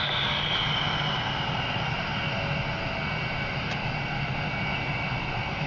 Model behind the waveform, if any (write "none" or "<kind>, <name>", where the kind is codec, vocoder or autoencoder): none